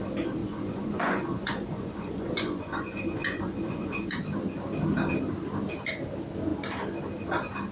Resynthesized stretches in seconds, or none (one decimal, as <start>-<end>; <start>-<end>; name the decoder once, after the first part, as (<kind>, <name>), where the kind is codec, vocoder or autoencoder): 0.4-4.2 (vocoder, Vocos)